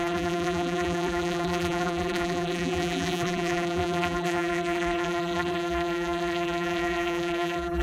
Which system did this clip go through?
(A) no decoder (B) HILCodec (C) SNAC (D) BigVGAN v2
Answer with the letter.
D